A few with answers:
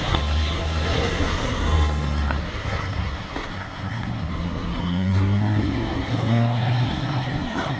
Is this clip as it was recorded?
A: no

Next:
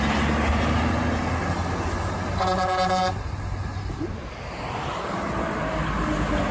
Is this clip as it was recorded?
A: yes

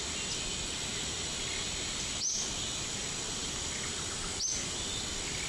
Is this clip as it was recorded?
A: yes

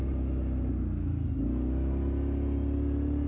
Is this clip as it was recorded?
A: yes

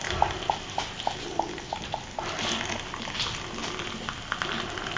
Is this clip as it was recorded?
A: yes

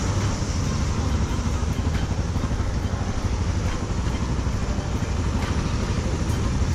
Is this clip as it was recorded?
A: yes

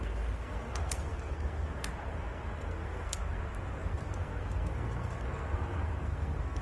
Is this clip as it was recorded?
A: no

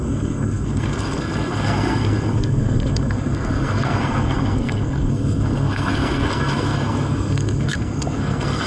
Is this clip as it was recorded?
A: no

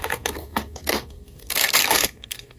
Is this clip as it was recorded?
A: no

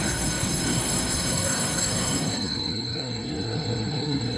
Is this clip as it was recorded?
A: no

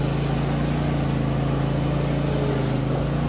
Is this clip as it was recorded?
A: yes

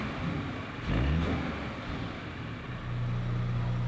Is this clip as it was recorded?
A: yes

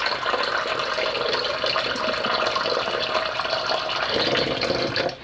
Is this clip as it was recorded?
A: yes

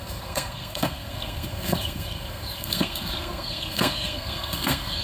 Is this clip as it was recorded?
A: no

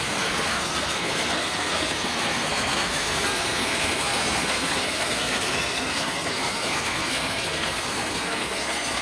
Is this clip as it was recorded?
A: no